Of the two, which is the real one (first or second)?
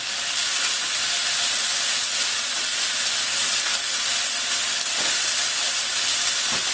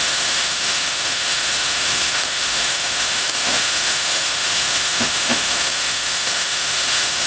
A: first